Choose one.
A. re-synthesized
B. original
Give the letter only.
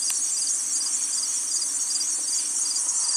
A